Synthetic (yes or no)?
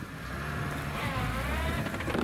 no